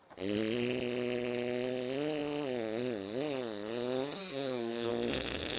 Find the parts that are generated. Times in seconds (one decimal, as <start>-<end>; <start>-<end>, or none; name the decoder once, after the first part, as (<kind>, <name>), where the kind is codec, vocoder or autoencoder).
4.2-4.9 (codec, SNAC)